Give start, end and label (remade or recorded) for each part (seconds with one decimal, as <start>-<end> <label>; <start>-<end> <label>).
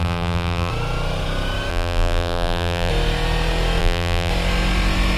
0.0-0.7 remade; 0.7-1.7 recorded; 1.7-2.9 remade; 2.9-3.8 recorded; 3.8-4.3 remade; 4.3-5.2 recorded